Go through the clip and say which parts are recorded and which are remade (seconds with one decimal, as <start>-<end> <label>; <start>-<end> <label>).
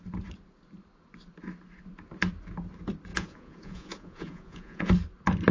0.0-3.1 recorded; 3.1-4.9 remade; 4.9-5.5 recorded